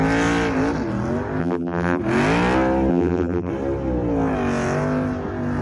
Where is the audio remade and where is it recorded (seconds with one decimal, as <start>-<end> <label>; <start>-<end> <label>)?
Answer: 0.0-1.4 recorded; 1.4-2.0 remade; 2.0-2.9 recorded; 2.9-3.5 remade; 3.5-5.6 recorded